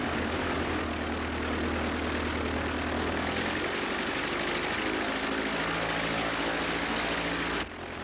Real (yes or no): yes